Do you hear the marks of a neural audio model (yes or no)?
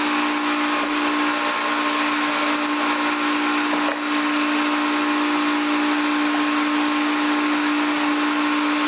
no